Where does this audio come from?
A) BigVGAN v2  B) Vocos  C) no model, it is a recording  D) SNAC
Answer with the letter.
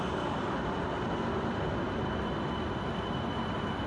C